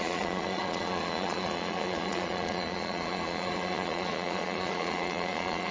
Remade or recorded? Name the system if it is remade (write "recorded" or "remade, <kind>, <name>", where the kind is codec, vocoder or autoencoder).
remade, vocoder, Vocos